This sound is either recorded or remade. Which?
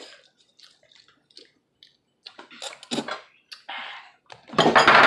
recorded